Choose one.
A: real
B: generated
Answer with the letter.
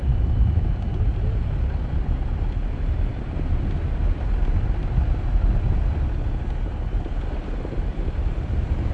A